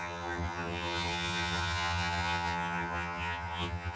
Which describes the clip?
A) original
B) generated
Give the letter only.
B